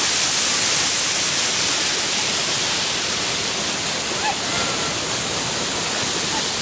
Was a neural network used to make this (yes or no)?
no